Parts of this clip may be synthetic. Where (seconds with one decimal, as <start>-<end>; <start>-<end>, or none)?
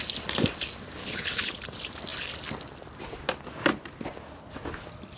1.0-1.6